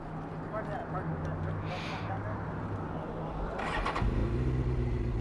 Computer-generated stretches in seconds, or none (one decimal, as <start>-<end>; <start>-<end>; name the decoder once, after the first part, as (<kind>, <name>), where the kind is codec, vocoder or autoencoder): none